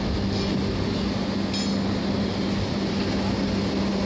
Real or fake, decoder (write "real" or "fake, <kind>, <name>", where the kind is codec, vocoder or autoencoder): real